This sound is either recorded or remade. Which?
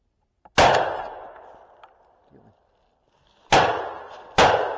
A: recorded